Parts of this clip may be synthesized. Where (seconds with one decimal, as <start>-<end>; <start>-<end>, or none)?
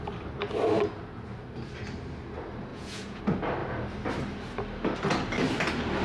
2.7-3.2